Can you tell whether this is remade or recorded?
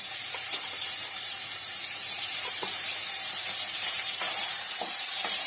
remade